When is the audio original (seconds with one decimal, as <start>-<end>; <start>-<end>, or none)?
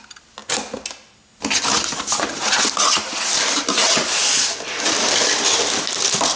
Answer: 0.0-6.4